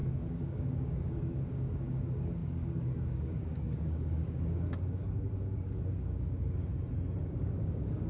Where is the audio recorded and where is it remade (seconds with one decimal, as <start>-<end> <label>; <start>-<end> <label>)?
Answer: 0.0-6.7 remade; 6.7-7.2 recorded; 7.2-8.1 remade